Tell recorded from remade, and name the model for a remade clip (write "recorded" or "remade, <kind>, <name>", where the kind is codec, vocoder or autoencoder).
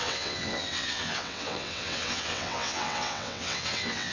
remade, vocoder, WaveNeXt